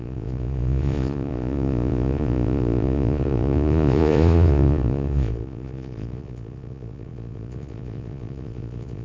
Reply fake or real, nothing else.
fake